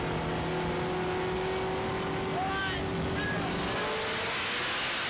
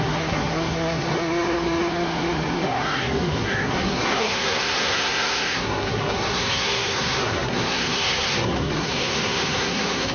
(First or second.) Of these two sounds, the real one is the first